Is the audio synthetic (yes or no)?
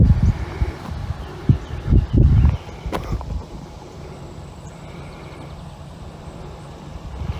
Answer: no